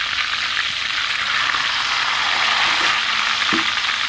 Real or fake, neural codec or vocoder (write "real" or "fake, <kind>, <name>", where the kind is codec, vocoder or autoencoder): real